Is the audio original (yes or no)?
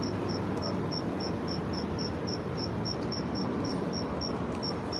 yes